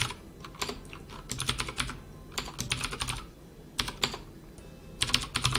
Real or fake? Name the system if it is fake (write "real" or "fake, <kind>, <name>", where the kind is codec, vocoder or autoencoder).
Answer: real